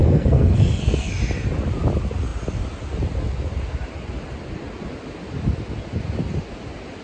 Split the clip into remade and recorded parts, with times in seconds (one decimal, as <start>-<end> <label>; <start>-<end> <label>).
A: 0.0-1.1 remade; 1.1-7.0 recorded